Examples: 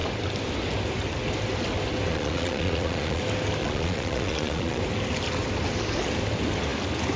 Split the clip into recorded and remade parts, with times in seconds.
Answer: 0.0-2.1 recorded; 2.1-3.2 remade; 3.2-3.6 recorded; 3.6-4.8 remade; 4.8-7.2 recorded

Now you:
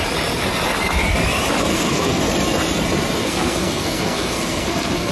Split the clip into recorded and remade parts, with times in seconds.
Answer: 0.0-1.7 recorded; 1.7-2.2 remade; 2.2-3.2 recorded; 3.2-5.1 remade

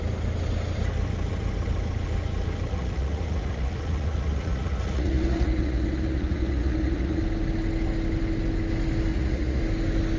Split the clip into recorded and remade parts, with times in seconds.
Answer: 0.0-2.7 recorded; 2.7-7.2 remade; 7.2-9.1 recorded; 9.1-9.6 remade; 9.6-10.2 recorded

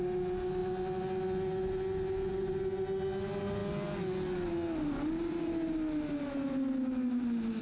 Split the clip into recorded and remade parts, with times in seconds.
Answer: 0.0-7.6 recorded

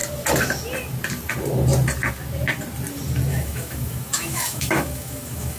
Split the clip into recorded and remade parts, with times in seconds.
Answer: 0.0-3.3 recorded; 3.3-5.6 remade